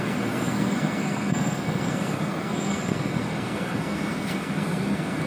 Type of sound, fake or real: fake